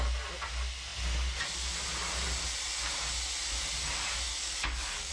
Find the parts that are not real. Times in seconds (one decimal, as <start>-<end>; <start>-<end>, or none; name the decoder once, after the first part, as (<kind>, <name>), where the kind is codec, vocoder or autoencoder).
4.3-5.1 (codec, DAC)